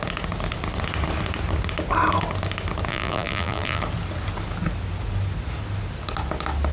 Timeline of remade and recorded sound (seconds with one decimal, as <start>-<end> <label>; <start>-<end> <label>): 0.0-2.9 recorded; 2.9-3.8 remade; 3.8-6.7 recorded

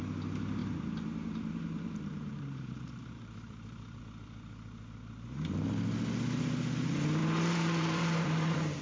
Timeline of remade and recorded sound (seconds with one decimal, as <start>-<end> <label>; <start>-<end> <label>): 0.0-0.6 recorded; 0.6-4.0 remade; 4.0-7.2 recorded; 7.2-8.8 remade

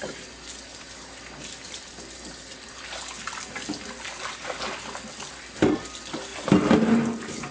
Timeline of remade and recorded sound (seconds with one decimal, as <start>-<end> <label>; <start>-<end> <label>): 0.0-7.5 recorded

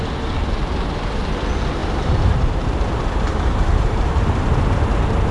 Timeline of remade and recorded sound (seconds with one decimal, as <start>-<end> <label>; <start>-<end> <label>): 0.0-1.8 recorded; 1.8-5.3 remade